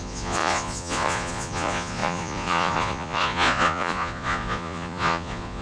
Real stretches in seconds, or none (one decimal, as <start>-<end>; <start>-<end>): none